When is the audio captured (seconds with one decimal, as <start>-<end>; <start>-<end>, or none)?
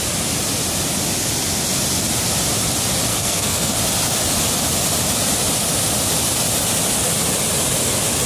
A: 0.0-3.1; 3.8-8.3